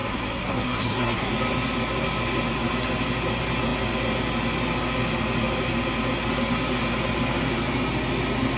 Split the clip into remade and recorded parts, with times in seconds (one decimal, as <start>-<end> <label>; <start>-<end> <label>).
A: 0.0-1.3 remade; 1.3-8.6 recorded